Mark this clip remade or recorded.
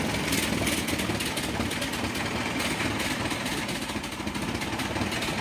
recorded